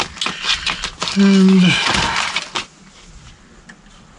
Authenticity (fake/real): real